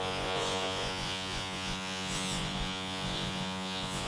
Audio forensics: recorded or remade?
remade